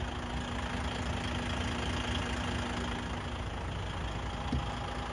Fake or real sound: real